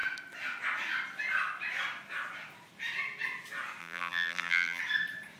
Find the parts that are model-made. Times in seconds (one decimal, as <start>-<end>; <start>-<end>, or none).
3.8-4.8